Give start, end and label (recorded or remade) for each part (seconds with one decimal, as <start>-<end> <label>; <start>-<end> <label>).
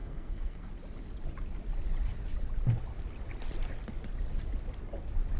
0.0-0.7 remade; 0.7-5.4 recorded